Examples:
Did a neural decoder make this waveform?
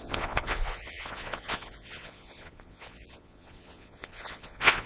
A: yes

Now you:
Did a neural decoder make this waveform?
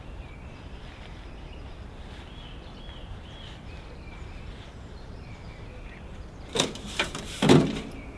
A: yes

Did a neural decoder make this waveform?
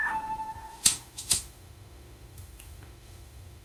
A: yes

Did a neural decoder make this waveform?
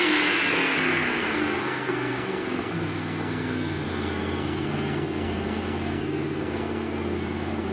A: yes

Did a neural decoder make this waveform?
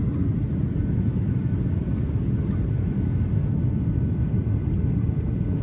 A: no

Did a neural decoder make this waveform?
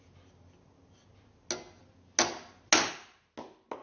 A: no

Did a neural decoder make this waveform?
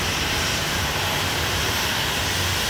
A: no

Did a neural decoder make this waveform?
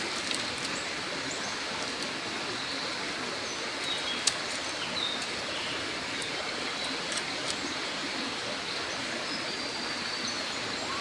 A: no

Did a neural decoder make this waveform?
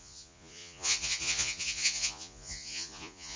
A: yes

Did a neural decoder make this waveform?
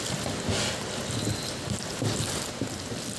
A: no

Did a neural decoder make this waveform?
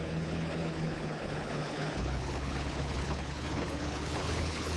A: yes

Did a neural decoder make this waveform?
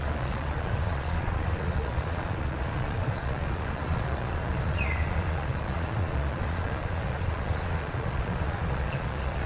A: yes